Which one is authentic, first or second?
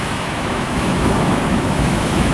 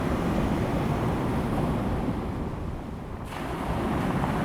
second